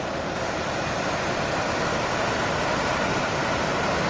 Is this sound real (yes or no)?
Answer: yes